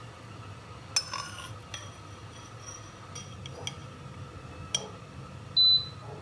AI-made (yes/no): no